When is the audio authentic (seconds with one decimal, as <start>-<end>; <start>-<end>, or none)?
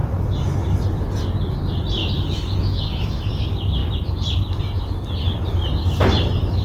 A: 0.0-2.0; 3.3-6.6